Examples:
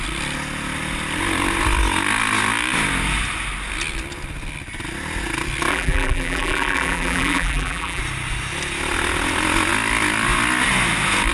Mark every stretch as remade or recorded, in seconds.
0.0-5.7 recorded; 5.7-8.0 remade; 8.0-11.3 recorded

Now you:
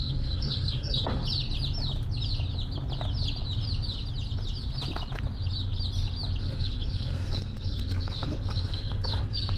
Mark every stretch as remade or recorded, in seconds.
0.0-1.2 remade; 1.2-6.4 recorded; 6.4-9.6 remade

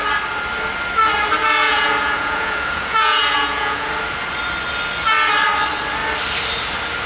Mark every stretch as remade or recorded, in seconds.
0.0-1.6 recorded; 1.6-3.9 remade; 3.9-7.1 recorded

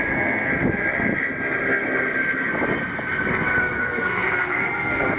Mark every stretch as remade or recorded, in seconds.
0.0-0.5 remade; 0.5-3.6 recorded; 3.6-5.2 remade

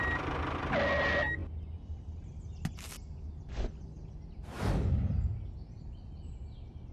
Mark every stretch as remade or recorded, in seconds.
0.0-6.9 recorded

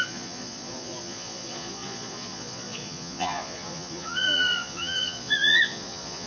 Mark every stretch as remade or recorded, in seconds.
0.0-6.3 remade

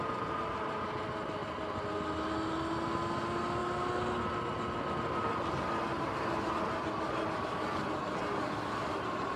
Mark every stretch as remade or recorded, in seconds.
0.0-9.4 recorded

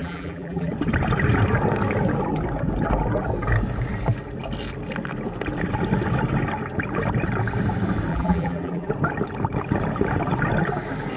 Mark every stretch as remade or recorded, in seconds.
0.0-0.7 remade; 0.7-8.1 recorded; 8.1-8.9 remade; 8.9-11.2 recorded